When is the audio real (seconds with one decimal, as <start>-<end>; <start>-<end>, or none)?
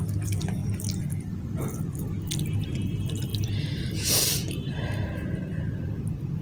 0.0-0.6; 1.3-6.4